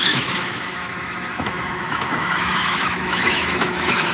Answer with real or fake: fake